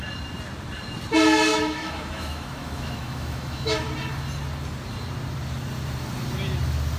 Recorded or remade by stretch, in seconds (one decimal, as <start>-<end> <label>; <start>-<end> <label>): 0.0-1.5 recorded; 1.5-3.9 remade; 3.9-7.0 recorded